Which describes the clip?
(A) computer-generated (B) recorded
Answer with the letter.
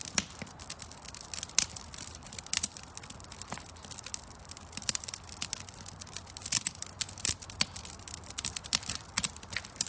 B